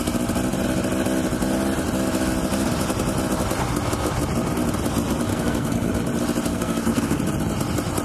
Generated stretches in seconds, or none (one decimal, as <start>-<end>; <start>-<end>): 5.3-5.9; 6.5-7.2